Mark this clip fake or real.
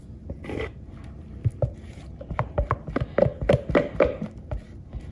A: real